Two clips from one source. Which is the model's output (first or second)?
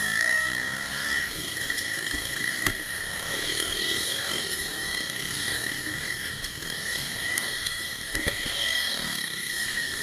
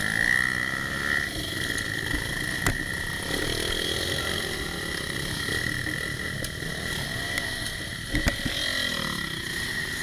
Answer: first